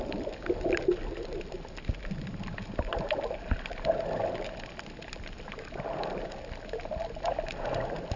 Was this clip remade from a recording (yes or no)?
no